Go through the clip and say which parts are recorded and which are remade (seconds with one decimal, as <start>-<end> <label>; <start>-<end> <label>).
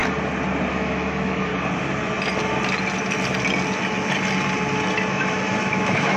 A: 0.0-0.7 recorded; 0.7-1.5 remade; 1.5-5.1 recorded; 5.1-6.2 remade